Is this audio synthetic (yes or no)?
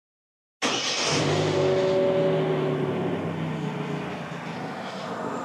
no